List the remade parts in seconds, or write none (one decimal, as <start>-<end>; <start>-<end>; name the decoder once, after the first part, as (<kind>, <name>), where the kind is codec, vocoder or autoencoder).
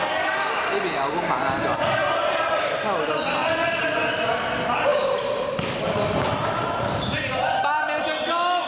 none